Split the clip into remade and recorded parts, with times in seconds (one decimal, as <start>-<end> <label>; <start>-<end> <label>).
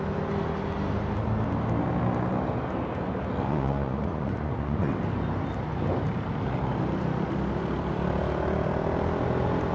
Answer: 0.0-3.5 recorded; 3.5-4.9 remade; 4.9-9.7 recorded